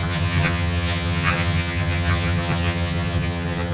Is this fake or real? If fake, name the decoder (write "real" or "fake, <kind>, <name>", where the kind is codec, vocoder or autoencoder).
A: fake, vocoder, HiFi-GAN